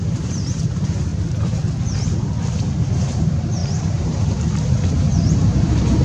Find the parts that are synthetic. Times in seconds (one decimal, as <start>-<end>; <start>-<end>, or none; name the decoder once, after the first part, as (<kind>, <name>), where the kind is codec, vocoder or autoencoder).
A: 0.0-1.1 (vocoder, BigVGAN v2); 2.9-6.0

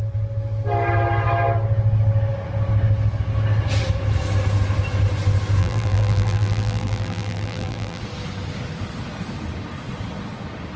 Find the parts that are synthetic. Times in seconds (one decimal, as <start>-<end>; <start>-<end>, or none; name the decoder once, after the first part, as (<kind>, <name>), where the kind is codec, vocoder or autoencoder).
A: 5.6-8.0 (vocoder, BigVGAN v2)

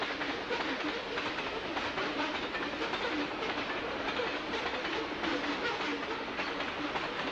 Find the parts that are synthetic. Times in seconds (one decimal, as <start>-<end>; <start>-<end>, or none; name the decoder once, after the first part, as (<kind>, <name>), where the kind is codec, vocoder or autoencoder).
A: 0.0-5.9 (vocoder, BigVGAN v2); 6.8-7.3

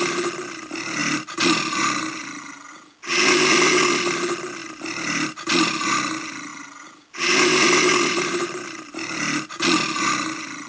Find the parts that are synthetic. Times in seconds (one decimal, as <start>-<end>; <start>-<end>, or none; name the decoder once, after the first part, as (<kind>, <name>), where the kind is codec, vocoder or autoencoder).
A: 1.0-1.5 (vocoder, BigVGAN v2); 4.6-5.7; 6.5-8.9

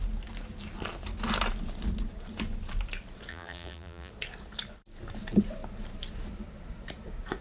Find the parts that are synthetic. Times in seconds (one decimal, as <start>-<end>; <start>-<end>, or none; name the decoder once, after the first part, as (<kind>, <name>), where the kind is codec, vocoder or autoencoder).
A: 3.3-4.1 (vocoder, BigVGAN v2)

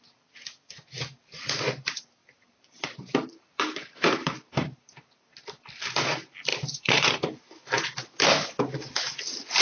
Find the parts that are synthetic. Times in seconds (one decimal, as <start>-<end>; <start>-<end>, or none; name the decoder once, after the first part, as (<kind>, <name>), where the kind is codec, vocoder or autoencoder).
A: 2.2-5.1 (vocoder, BigVGAN v2); 6.5-7.1